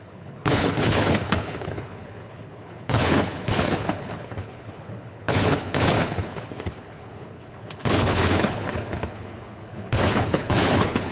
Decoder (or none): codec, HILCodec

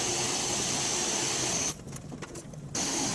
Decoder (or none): none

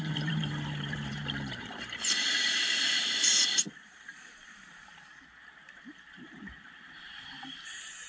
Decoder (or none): vocoder, BigVGAN v2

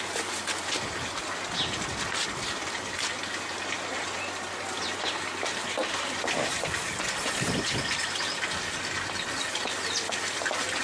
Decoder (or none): none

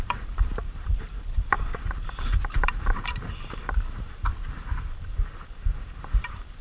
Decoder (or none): vocoder, BigVGAN v2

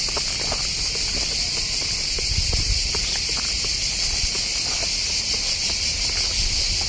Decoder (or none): none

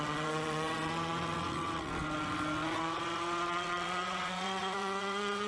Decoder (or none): vocoder, WaveNeXt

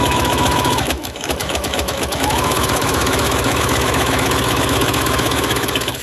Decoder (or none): autoencoder, DAC-VAE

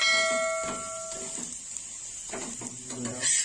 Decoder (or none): none